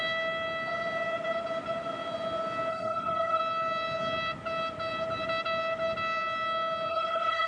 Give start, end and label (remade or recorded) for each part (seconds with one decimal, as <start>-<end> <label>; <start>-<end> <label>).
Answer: 0.0-2.7 recorded; 2.7-3.4 remade; 3.4-6.9 recorded; 6.9-7.5 remade